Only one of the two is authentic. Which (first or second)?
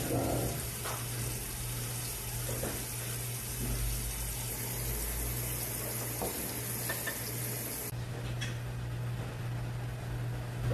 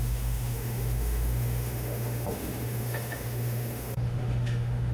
first